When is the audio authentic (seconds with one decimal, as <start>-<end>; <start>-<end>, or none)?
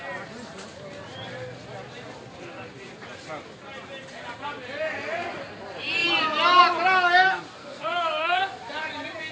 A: 0.0-7.6; 8.4-9.3